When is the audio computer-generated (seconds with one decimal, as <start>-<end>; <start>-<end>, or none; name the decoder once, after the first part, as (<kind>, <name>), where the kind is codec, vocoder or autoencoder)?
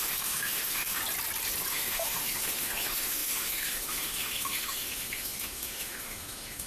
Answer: 0.0-1.0 (autoencoder, DAC-VAE); 1.7-6.7